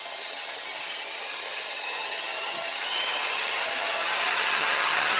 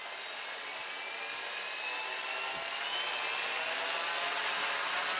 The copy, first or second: first